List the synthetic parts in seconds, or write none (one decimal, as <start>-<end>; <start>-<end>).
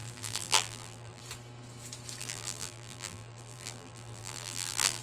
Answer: 0.0-1.2; 2.2-5.0